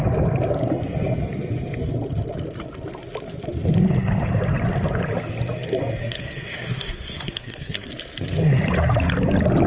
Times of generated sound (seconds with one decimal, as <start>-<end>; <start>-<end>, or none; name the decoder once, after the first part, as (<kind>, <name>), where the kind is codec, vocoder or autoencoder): 6.0-7.9 (codec, SNAC)